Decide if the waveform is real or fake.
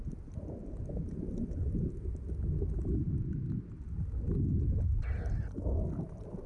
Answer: real